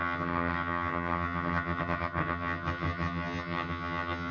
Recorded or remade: remade